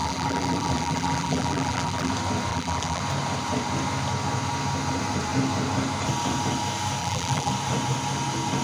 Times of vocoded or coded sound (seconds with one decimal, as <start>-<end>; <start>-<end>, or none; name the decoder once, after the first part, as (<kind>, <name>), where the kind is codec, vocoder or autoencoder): 0.0-2.1 (vocoder, BigVGAN v2); 2.5-3.0; 7.0-7.5